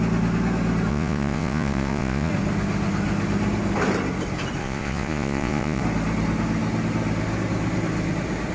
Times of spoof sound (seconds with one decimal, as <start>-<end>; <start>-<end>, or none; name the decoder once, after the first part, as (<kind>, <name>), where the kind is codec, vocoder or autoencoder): 0.9-2.3 (vocoder, Vocos); 4.6-5.8